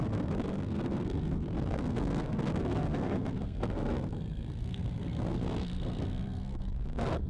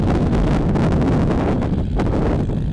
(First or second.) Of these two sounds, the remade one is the first